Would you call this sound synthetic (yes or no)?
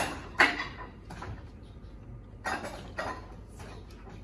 no